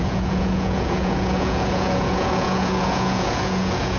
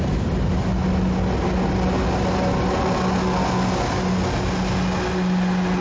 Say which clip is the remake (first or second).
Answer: first